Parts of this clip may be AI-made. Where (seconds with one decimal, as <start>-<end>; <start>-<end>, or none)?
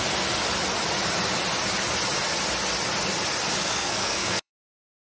3.6-4.5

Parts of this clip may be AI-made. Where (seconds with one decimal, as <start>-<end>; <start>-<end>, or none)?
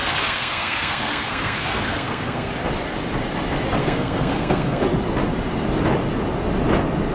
0.0-2.5; 3.8-4.8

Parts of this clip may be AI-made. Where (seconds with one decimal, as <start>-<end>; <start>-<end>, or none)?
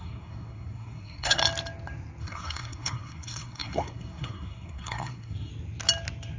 0.0-1.4; 2.2-5.5